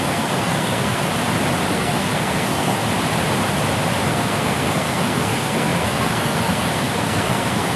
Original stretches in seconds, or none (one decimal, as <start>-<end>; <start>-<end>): 1.1-1.7; 2.8-4.1